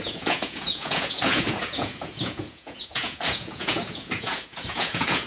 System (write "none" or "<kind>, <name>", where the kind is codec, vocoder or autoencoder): vocoder, Vocos